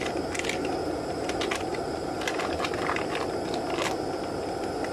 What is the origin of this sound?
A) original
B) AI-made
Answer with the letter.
A